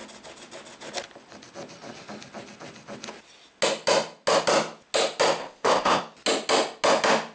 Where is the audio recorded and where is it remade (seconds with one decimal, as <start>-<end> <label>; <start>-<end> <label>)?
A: 0.0-5.4 recorded; 5.4-6.0 remade; 6.0-7.3 recorded

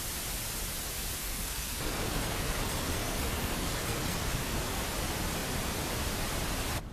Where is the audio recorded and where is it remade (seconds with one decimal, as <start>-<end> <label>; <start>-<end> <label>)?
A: 0.0-1.2 recorded; 1.2-4.8 remade; 4.8-6.9 recorded

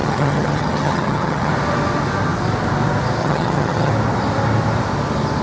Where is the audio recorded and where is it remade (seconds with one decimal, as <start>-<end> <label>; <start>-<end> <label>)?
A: 0.0-1.5 remade; 1.5-3.2 recorded; 3.2-3.9 remade; 3.9-5.4 recorded

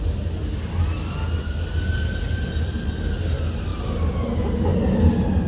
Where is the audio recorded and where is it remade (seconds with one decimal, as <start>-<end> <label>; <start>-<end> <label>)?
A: 0.0-3.7 recorded; 3.7-4.3 remade; 4.3-4.7 recorded; 4.7-5.5 remade

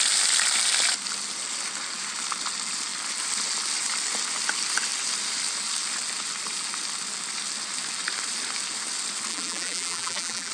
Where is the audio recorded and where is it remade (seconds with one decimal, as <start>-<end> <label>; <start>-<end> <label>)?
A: 0.0-9.3 recorded; 9.3-10.5 remade

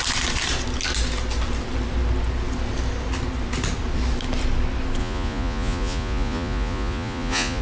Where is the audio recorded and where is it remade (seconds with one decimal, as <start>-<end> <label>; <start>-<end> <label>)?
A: 0.0-5.0 recorded; 5.0-7.6 remade